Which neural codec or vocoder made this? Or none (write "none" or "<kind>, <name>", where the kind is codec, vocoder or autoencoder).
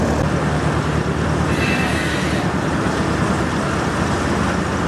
none